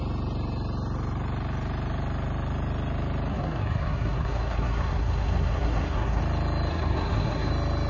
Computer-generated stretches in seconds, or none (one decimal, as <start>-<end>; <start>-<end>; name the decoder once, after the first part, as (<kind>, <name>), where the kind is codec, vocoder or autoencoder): 3.3-6.2 (codec, SNAC); 6.7-7.5